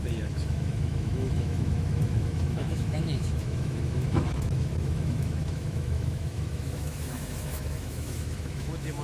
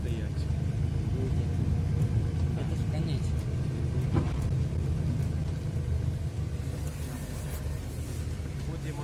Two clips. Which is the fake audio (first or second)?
first